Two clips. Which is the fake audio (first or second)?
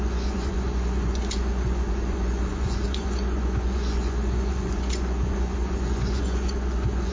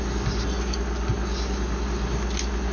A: first